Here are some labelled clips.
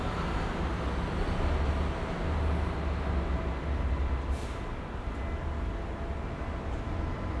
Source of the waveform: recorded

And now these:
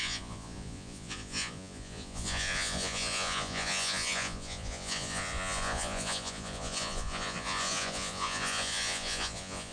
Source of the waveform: remade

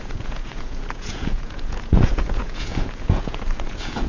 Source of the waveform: remade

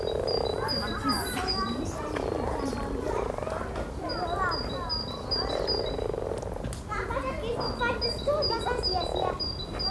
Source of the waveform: recorded